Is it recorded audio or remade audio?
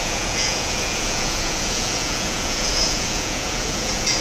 remade